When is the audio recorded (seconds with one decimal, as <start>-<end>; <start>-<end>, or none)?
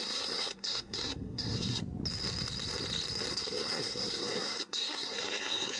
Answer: 1.8-3.3